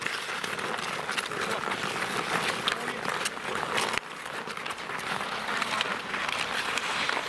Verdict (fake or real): real